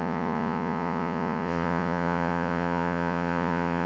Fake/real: fake